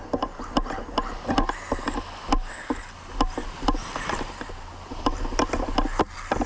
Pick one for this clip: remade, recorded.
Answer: recorded